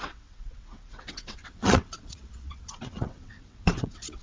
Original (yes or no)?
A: no